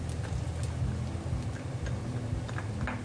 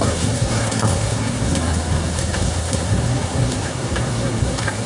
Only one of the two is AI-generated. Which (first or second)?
second